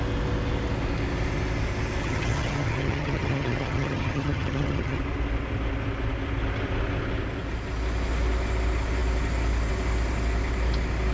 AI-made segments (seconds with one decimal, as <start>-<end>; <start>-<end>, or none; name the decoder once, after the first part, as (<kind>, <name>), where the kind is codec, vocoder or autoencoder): 2.0-5.0 (vocoder, HiFi-GAN)